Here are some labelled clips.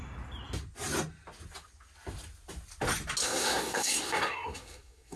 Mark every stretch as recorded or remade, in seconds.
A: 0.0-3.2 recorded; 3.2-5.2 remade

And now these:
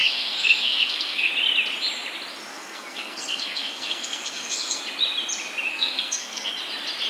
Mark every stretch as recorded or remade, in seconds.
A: 0.0-1.3 remade; 1.3-2.5 recorded; 2.5-4.8 remade; 4.8-5.7 recorded; 5.7-6.5 remade; 6.5-7.1 recorded

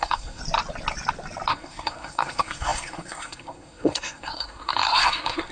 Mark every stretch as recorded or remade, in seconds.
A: 0.0-0.4 remade; 0.4-1.5 recorded; 1.5-5.5 remade

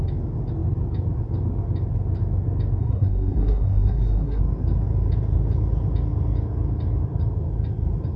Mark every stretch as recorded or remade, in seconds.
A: 0.0-2.8 recorded; 2.8-4.4 remade; 4.4-8.2 recorded

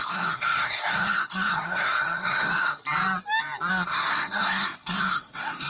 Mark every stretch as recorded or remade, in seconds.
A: 0.0-2.8 remade; 2.8-3.7 recorded; 3.7-5.7 remade

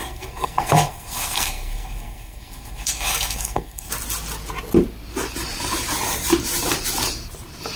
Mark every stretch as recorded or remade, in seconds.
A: 0.0-3.9 remade; 3.9-7.8 recorded

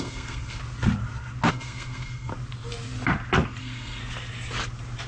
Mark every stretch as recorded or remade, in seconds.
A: 0.0-0.6 remade; 0.6-1.5 recorded; 1.5-2.3 remade; 2.3-3.6 recorded; 3.6-4.0 remade; 4.0-5.1 recorded

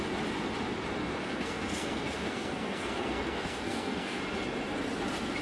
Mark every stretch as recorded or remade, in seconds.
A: 0.0-1.0 recorded; 1.0-4.2 remade; 4.2-5.4 recorded